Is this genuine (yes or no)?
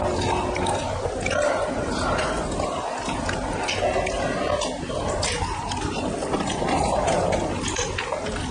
yes